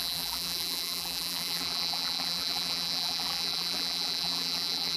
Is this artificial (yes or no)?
yes